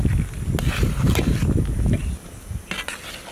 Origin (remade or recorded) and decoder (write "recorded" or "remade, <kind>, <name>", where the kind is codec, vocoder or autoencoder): recorded